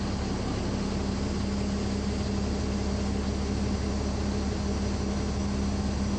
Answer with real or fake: real